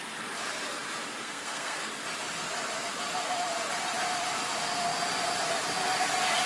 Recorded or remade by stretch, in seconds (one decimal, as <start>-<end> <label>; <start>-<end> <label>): 0.0-1.2 recorded; 1.2-1.9 remade; 1.9-6.5 recorded